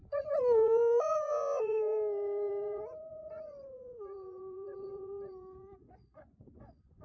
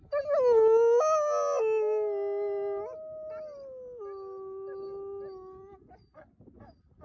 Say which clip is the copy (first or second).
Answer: first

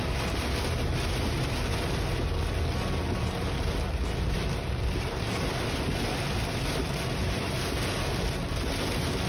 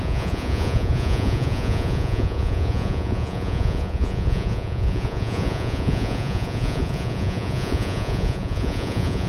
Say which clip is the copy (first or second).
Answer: second